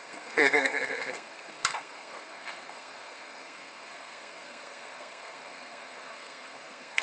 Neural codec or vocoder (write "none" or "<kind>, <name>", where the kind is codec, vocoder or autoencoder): codec, SNAC